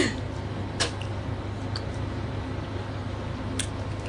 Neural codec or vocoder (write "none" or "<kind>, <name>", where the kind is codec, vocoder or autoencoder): none